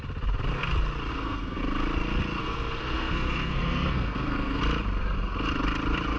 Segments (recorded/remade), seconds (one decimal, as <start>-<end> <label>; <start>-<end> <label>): 0.0-1.1 recorded; 1.1-1.6 remade; 1.6-2.4 recorded; 2.4-4.6 remade; 4.6-6.2 recorded